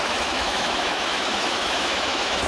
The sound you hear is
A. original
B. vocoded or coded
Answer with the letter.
B